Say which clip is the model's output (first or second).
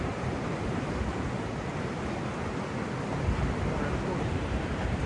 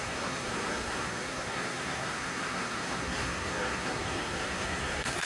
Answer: second